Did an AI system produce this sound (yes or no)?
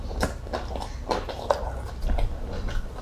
no